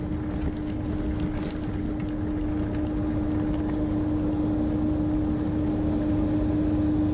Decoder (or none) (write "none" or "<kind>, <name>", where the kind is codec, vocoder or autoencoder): none